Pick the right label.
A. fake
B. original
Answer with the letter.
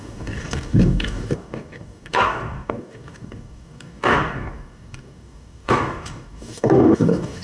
A